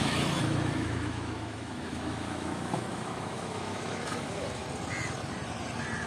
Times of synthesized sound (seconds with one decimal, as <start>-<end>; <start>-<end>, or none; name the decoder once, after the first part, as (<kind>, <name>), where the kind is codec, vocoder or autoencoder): 0.0-4.6 (autoencoder, DAC-VAE)